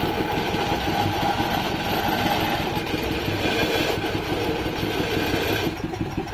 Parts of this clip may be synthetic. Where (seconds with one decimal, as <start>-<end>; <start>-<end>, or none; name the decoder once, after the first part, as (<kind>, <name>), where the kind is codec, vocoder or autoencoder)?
none